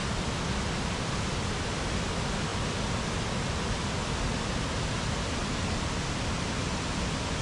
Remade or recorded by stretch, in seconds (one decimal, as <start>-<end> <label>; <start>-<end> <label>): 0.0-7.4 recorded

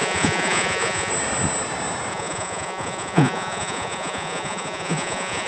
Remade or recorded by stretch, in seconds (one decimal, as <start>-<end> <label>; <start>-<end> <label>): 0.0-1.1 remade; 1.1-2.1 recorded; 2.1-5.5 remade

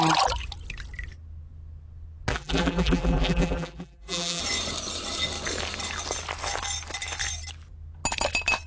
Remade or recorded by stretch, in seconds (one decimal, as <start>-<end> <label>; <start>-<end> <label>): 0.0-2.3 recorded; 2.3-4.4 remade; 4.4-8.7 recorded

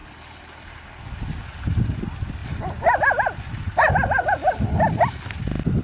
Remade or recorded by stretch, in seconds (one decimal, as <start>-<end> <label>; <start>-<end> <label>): 0.0-5.8 recorded

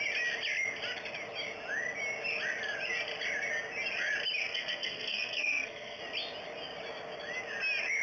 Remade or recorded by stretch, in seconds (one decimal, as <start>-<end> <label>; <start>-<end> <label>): 0.0-4.4 recorded; 4.4-6.0 remade; 6.0-8.0 recorded

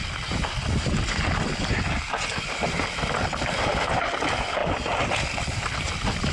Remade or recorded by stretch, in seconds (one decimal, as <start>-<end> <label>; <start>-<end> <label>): 0.0-6.3 recorded

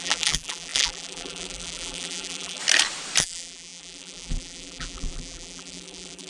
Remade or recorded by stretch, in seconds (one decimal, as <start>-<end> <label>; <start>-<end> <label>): 0.0-2.6 remade; 2.6-3.2 recorded; 3.2-6.3 remade

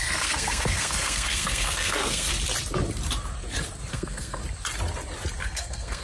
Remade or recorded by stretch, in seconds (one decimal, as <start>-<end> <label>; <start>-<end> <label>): 0.0-2.3 remade; 2.3-3.9 recorded; 3.9-4.4 remade; 4.4-5.4 recorded; 5.4-6.0 remade